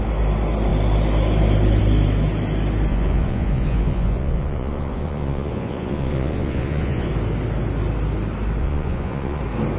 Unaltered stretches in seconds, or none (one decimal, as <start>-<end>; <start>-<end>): 0.0-2.9; 7.1-8.6; 9.4-9.8